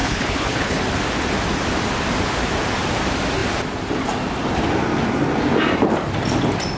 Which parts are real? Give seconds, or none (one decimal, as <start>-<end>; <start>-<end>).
0.8-6.8